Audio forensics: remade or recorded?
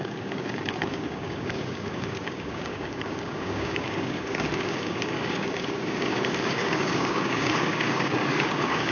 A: remade